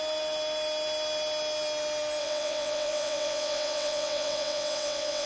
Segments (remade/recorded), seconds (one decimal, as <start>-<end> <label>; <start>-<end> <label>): 0.0-2.2 recorded; 2.2-5.3 remade